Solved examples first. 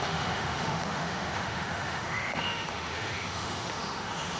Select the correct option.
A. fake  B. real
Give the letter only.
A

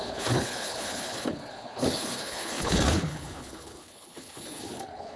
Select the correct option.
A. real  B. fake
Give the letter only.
B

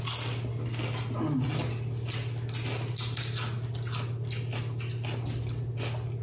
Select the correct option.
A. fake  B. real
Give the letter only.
B